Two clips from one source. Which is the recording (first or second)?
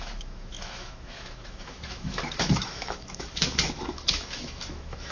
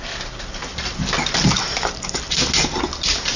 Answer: second